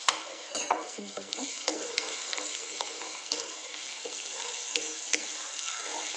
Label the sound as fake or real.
fake